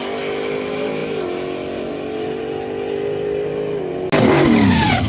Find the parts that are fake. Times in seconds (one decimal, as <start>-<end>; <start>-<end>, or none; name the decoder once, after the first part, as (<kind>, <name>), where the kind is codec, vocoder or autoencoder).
none